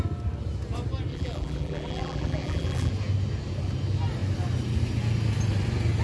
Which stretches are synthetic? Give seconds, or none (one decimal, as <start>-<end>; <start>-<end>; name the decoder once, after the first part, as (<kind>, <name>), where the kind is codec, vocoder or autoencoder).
1.1-2.9 (vocoder, BigVGAN v2)